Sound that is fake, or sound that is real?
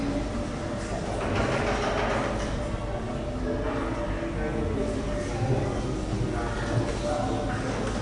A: real